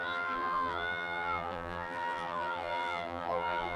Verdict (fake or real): fake